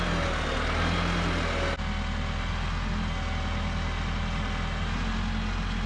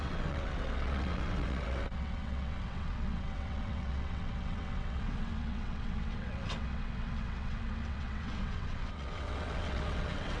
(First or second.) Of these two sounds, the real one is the first